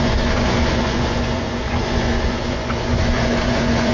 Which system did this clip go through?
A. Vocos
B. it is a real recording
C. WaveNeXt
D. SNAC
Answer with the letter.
A